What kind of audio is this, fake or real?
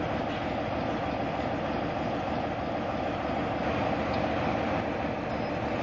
real